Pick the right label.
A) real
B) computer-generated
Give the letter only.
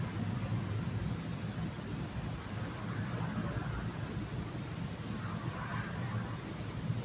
A